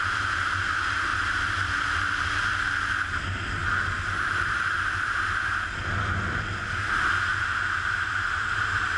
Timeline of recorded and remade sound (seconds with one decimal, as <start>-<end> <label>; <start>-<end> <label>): 0.0-1.1 recorded; 1.1-2.0 remade; 2.0-3.6 recorded; 3.6-4.4 remade; 4.4-9.0 recorded